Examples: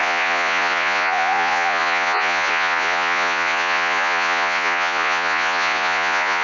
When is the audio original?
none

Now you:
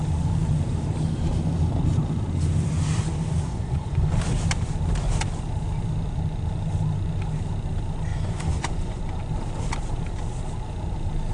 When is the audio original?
0.0-3.5; 4.1-8.1; 9.0-11.3

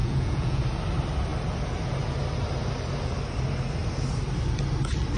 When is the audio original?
0.6-5.2

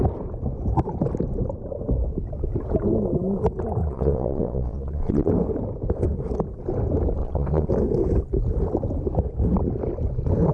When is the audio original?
0.0-3.8; 5.3-7.2; 7.7-10.5

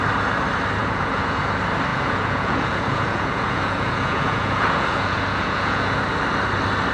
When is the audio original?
0.0-0.8; 1.4-1.9; 6.0-6.9

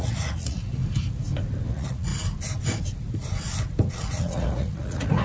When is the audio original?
0.8-1.7; 2.1-3.9